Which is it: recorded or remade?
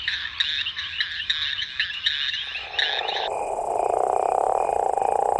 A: recorded